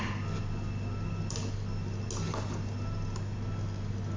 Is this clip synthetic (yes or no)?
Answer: no